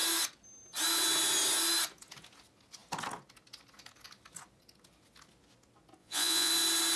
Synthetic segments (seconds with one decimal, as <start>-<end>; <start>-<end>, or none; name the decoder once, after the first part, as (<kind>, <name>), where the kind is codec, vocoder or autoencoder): 6.0-6.5 (vocoder, Vocos)